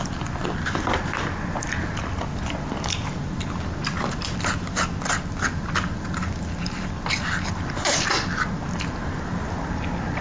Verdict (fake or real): fake